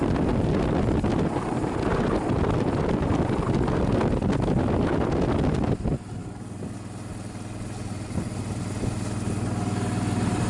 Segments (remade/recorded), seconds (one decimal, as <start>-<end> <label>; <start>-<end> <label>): 0.0-10.5 recorded